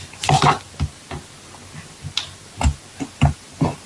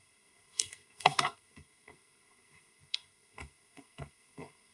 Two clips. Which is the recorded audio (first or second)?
first